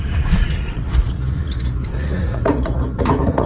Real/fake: fake